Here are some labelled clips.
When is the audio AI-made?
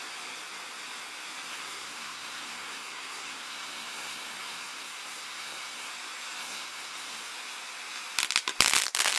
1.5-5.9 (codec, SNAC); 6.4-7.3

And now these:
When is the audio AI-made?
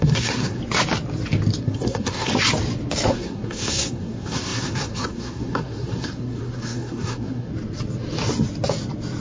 0.0-0.6 (codec, SNAC); 1.6-2.3; 3.1-7.5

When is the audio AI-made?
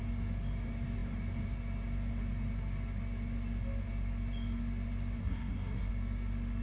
5.2-5.9 (codec, SNAC)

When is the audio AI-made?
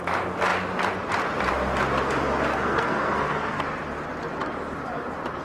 2.5-3.6 (codec, SNAC)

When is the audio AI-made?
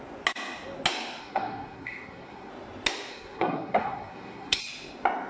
1.2-2.5 (codec, SNAC); 3.1-4.6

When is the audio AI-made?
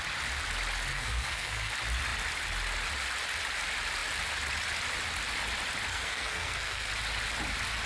0.9-1.7 (codec, SNAC); 5.9-6.9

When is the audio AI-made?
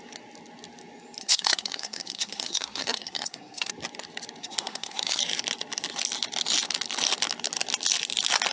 1.2-3.7 (codec, SNAC); 4.4-5.2